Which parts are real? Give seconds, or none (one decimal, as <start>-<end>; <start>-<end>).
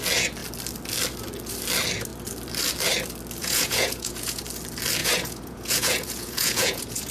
0.0-3.4; 4.4-5.0